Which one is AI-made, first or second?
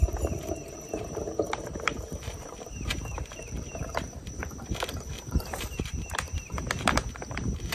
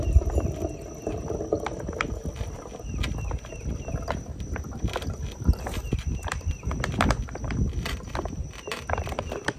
first